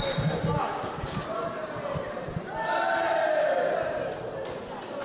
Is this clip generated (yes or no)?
no